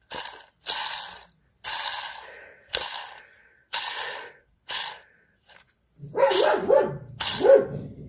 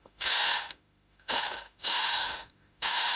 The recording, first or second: first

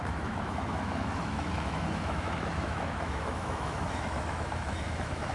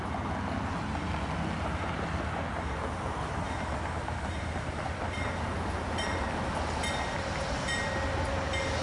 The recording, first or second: second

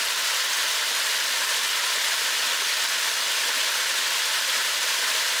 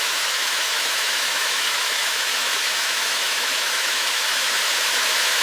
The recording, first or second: first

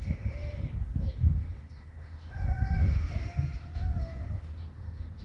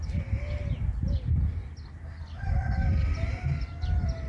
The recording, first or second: second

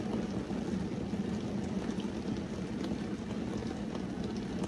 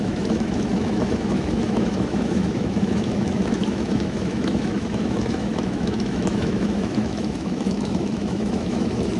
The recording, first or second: first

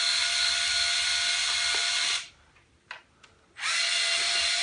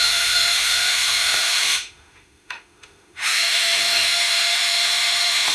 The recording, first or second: first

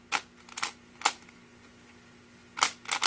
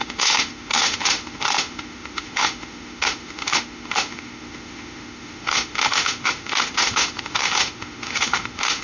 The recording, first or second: first